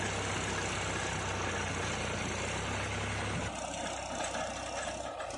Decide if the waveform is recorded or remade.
recorded